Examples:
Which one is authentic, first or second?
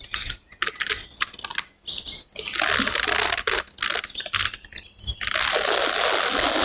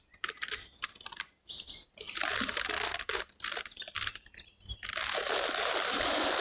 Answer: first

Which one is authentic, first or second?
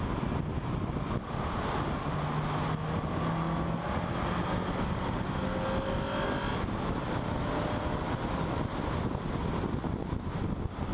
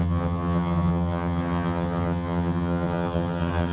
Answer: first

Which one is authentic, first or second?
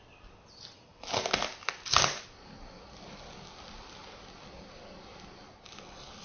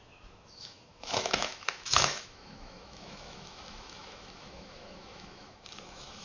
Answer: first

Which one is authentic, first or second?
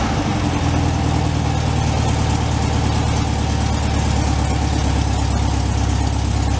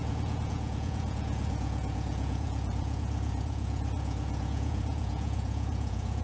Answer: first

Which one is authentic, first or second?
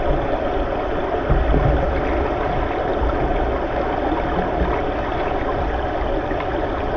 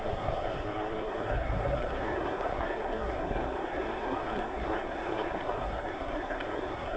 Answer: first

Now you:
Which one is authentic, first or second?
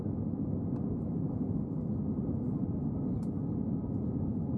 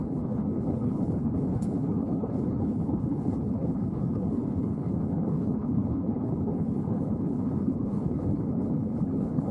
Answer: first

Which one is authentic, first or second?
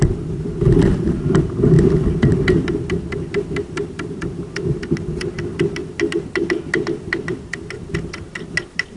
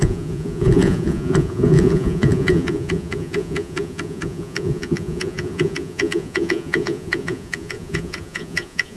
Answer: first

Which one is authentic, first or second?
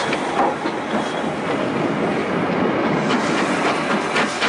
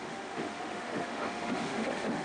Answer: first